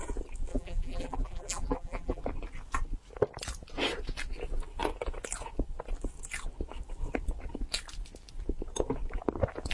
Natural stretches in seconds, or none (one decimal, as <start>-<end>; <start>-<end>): 0.0-0.5; 2.2-9.7